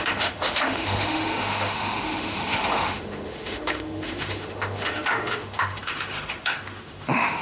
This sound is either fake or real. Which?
fake